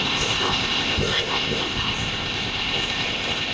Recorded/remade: remade